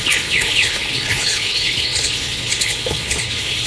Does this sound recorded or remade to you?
remade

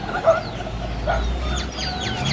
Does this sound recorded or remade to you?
recorded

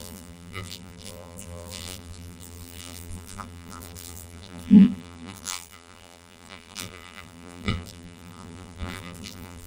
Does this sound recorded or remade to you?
remade